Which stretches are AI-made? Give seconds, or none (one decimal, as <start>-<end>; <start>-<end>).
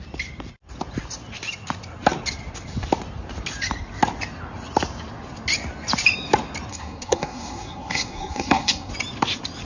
6.7-8.9